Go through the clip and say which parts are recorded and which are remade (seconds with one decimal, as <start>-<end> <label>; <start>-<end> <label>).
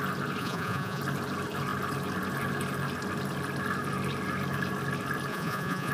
0.0-0.4 recorded; 0.4-1.0 remade; 1.0-5.3 recorded; 5.3-5.9 remade